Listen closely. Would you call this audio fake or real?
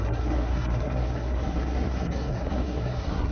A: fake